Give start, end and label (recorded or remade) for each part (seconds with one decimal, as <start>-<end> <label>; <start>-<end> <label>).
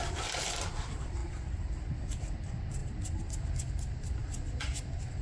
0.0-5.2 recorded